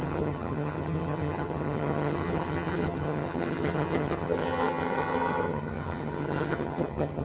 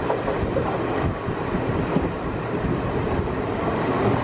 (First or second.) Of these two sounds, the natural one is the second